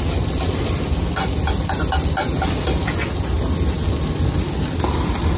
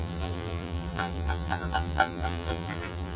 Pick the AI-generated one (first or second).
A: second